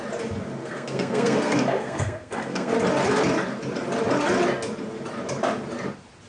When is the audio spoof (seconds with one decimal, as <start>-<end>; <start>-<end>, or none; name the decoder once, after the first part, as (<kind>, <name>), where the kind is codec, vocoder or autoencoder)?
0.6-2.7 (codec, SNAC)